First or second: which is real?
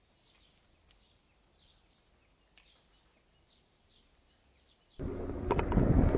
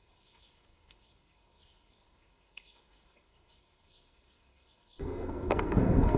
first